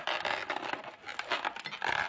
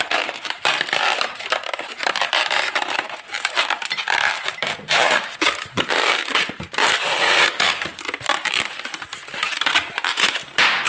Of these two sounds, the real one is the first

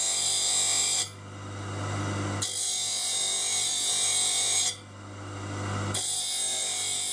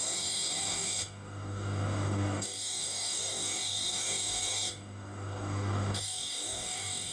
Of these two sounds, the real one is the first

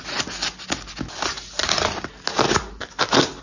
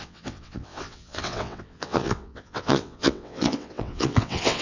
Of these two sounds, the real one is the first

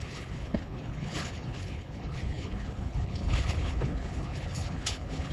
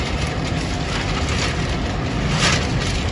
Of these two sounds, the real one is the second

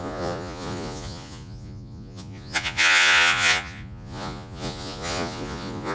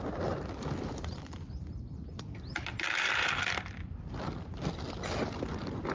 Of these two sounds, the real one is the second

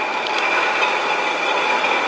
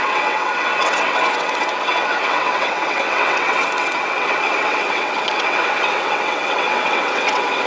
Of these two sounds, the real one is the first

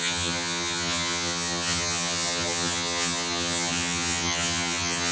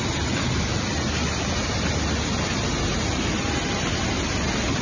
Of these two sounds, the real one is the second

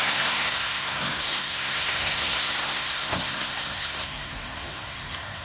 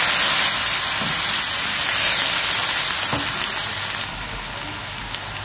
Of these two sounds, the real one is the second